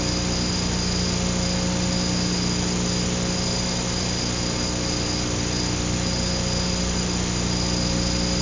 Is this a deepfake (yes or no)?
no